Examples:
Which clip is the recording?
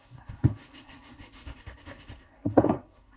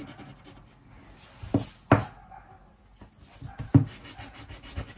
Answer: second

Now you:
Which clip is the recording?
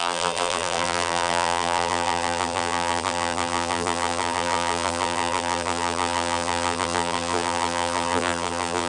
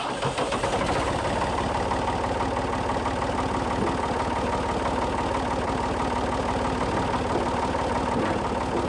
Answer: second